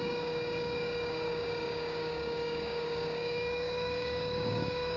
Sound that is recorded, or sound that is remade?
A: remade